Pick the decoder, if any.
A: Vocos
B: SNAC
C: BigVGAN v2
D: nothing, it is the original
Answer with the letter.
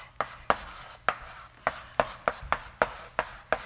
D